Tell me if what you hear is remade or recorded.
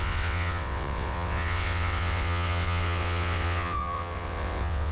remade